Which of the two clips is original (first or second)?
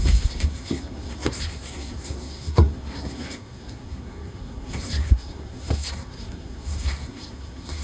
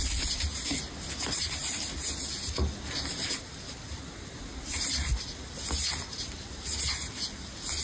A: second